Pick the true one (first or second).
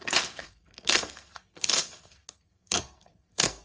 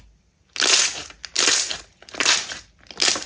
second